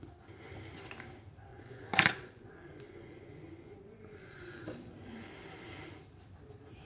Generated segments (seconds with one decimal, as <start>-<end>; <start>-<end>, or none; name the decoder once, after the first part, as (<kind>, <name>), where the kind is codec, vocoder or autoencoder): 1.5-5.3 (vocoder, Vocos)